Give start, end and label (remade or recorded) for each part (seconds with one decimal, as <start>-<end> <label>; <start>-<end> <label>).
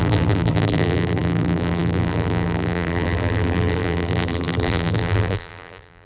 0.0-6.1 remade